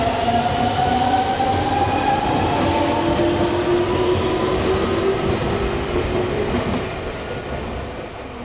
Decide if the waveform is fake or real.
real